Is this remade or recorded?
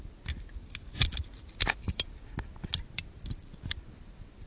recorded